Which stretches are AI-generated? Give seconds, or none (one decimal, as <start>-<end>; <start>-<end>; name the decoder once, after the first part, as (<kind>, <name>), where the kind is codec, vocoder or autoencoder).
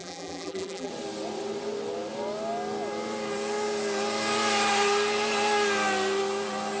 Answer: 0.0-0.9 (vocoder, BigVGAN v2)